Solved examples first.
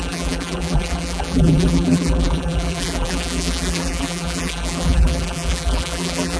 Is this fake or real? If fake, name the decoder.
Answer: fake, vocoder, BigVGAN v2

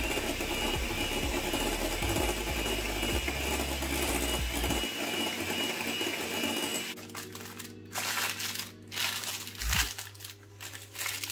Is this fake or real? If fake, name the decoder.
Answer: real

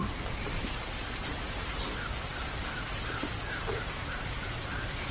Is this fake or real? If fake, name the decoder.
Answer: fake, vocoder, BigVGAN v2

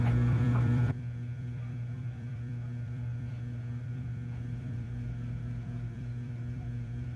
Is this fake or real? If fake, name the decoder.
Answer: fake, vocoder, BigVGAN v2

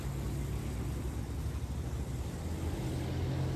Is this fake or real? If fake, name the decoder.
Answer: real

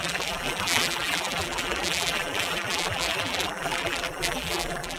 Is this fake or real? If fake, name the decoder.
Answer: fake, vocoder, BigVGAN v2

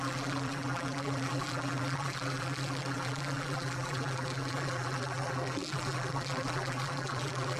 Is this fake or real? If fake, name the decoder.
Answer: fake, vocoder, BigVGAN v2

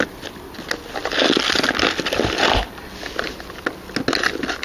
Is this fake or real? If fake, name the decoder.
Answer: real